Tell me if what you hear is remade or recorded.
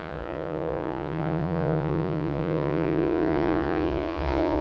remade